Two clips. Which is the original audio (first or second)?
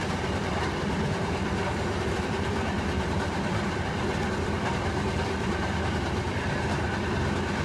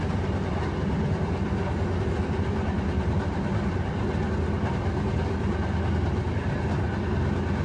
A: second